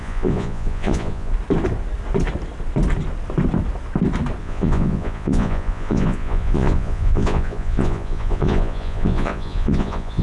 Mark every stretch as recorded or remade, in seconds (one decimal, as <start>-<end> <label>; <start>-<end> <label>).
0.0-1.3 remade; 1.3-4.4 recorded; 4.4-10.2 remade